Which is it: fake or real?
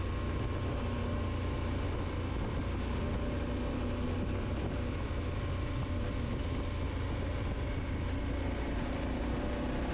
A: real